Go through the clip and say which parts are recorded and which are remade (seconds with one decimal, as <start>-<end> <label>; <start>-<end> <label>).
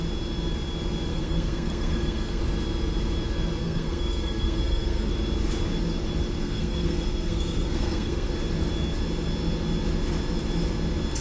0.0-1.1 recorded; 1.1-2.4 remade; 2.4-3.6 recorded; 3.6-5.1 remade; 5.1-6.4 recorded; 6.4-8.3 remade; 8.3-11.2 recorded